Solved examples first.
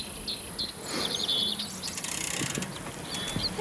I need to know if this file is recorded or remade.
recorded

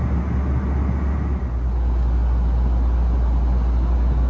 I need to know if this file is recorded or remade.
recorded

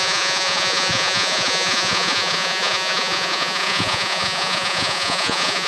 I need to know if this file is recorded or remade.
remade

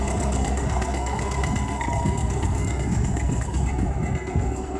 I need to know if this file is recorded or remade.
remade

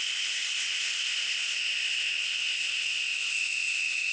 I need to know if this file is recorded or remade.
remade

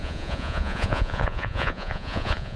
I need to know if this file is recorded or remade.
remade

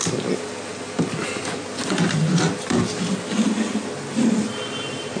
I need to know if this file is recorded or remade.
recorded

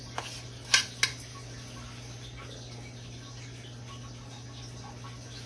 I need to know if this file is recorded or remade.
recorded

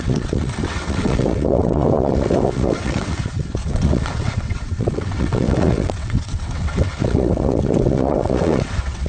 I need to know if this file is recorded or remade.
remade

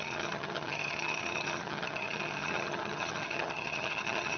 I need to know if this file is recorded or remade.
remade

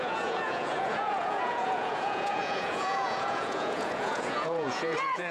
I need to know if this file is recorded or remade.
remade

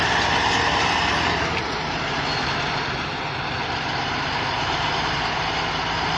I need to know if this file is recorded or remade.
remade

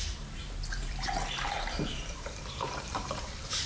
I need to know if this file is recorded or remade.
remade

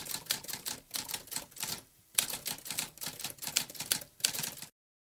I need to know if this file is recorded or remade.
remade